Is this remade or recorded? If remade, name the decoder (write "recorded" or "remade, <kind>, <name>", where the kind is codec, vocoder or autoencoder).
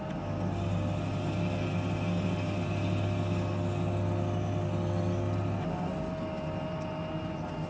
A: recorded